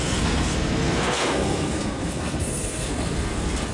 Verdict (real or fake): fake